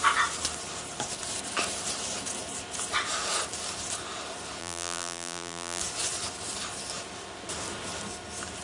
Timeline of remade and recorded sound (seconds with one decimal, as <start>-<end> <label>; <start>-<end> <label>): 0.0-4.6 recorded; 4.6-5.8 remade; 5.8-8.6 recorded